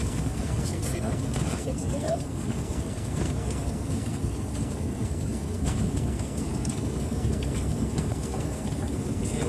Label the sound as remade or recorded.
remade